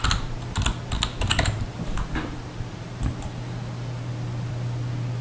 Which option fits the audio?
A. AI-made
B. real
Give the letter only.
B